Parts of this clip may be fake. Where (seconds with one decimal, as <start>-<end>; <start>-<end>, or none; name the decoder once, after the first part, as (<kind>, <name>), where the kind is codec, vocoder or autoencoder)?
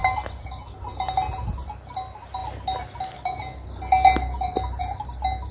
none